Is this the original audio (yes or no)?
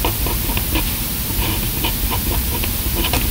yes